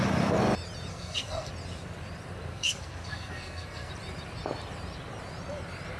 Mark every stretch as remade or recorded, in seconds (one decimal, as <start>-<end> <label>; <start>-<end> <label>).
0.0-0.9 recorded; 0.9-1.5 remade; 1.5-2.5 recorded; 2.5-3.9 remade; 3.9-6.0 recorded